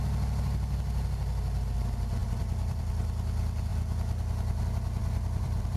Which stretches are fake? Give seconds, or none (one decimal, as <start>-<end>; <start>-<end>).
2.2-2.8; 5.0-5.8